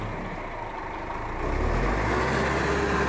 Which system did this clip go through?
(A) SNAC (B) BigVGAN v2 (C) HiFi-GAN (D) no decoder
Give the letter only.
D